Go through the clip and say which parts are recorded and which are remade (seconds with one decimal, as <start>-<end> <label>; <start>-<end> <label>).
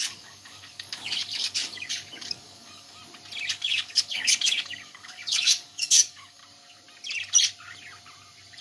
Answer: 0.0-3.0 remade; 3.0-3.5 recorded; 3.5-6.4 remade; 6.4-8.6 recorded